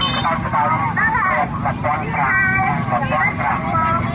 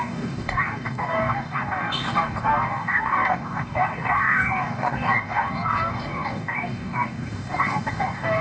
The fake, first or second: second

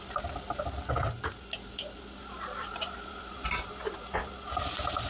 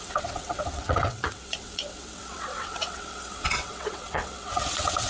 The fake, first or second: second